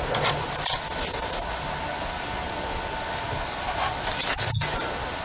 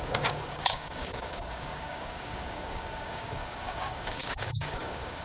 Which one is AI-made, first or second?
second